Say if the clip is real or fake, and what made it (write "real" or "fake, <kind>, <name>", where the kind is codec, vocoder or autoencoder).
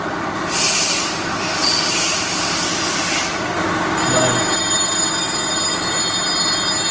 real